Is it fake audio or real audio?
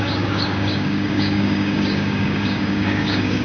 fake